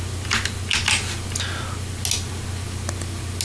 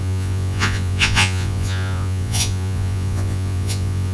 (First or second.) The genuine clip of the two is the first